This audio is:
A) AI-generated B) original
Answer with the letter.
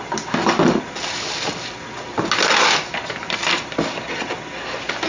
B